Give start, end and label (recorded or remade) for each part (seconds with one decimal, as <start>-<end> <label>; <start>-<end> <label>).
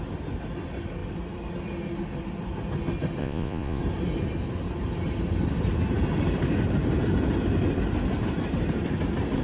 0.0-3.2 recorded; 3.2-3.8 remade; 3.8-9.4 recorded